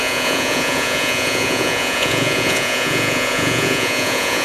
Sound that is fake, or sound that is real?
fake